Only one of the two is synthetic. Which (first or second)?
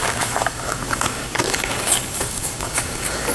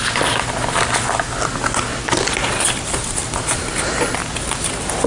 first